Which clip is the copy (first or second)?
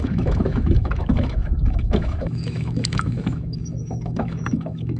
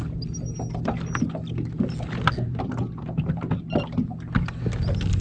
first